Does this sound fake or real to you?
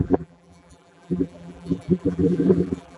fake